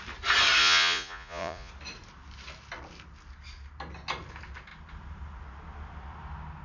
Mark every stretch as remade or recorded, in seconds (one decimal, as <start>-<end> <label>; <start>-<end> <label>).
0.0-0.6 recorded; 0.6-1.7 remade; 1.7-6.6 recorded